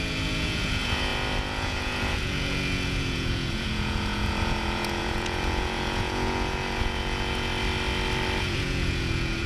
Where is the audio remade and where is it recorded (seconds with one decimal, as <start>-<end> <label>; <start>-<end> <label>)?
0.0-7.5 remade; 7.5-8.4 recorded; 8.4-9.5 remade